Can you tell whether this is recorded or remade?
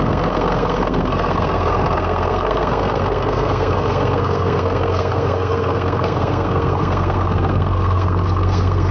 remade